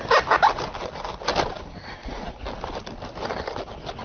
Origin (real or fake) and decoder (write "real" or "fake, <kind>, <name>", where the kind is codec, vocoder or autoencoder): real